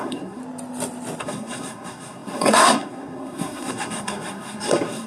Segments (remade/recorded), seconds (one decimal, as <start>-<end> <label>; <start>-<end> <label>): 0.0-0.4 remade; 0.4-1.2 recorded; 1.2-5.1 remade

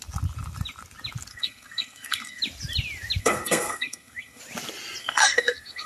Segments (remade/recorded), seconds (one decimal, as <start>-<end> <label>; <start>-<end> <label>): 0.0-1.3 recorded; 1.3-2.4 remade; 2.4-3.2 recorded; 3.2-4.4 remade; 4.4-5.0 recorded; 5.0-5.9 remade